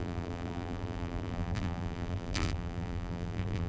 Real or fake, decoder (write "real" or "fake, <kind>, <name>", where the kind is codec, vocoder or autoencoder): fake, vocoder, BigVGAN v2